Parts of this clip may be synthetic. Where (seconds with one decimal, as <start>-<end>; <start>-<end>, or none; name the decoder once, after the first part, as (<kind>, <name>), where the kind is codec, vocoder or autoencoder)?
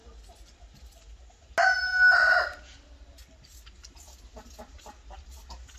none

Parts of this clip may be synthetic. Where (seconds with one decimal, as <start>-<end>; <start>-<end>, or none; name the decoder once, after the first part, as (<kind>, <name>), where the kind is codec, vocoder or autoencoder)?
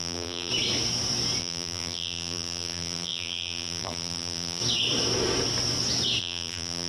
0.0-0.5 (vocoder, BigVGAN v2); 1.4-4.6; 6.2-6.9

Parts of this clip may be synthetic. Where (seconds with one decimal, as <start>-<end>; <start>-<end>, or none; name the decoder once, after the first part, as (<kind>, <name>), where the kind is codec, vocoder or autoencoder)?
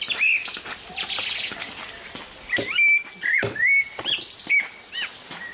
0.4-3.1 (vocoder, BigVGAN v2)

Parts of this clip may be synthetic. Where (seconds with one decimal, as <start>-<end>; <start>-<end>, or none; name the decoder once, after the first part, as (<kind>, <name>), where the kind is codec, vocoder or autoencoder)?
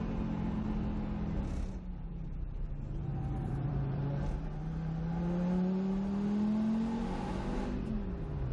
3.1-4.0 (vocoder, BigVGAN v2)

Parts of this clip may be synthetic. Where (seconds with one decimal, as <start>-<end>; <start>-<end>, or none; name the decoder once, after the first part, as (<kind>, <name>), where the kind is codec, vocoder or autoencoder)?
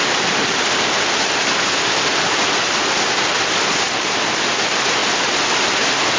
0.0-1.1 (vocoder, BigVGAN v2)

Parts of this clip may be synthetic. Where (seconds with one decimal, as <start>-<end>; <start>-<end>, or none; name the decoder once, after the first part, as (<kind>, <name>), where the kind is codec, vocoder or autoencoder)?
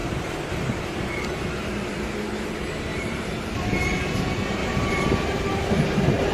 2.9-3.5 (vocoder, BigVGAN v2); 4.6-6.3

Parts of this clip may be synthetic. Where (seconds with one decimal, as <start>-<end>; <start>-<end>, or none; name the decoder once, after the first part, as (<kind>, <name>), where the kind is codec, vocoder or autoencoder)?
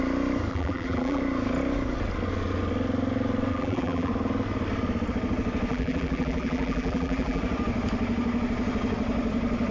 0.5-1.2 (vocoder, BigVGAN v2); 3.5-4.1; 5.7-7.4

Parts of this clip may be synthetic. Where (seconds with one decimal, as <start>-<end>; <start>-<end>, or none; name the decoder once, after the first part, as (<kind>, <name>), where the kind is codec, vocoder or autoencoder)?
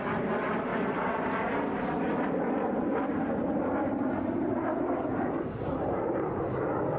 0.0-7.0 (vocoder, BigVGAN v2)